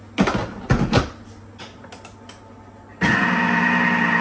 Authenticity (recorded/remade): recorded